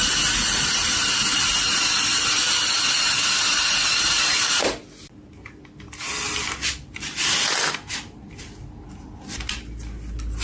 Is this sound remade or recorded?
recorded